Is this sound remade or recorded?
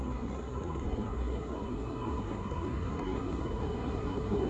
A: remade